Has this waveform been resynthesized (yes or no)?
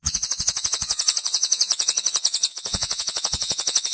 yes